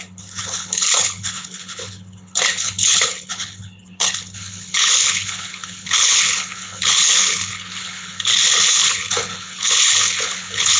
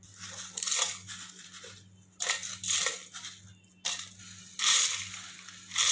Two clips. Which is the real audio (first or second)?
second